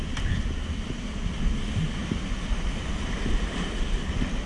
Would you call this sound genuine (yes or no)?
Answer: yes